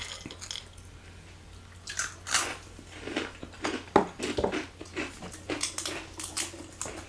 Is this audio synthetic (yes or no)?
no